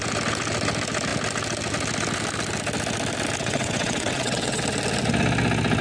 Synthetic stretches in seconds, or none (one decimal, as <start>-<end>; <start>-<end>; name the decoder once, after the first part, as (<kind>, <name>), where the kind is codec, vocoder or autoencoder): 3.4-4.6 (vocoder, WaveNeXt)